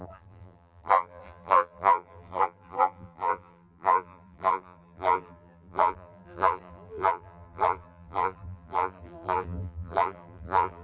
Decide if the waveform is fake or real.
fake